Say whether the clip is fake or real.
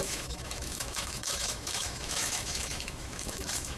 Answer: fake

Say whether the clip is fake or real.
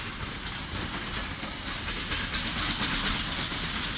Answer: real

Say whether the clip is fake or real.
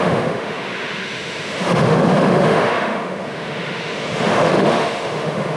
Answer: fake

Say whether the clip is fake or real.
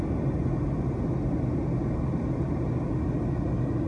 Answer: real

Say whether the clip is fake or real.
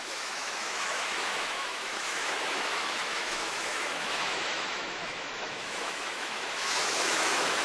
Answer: fake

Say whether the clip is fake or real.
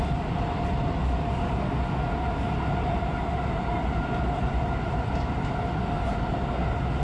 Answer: real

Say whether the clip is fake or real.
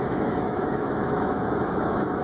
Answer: fake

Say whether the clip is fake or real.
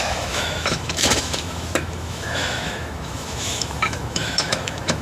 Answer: fake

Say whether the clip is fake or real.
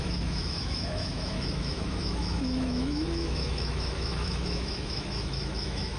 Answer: fake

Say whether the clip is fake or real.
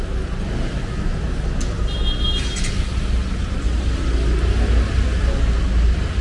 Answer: real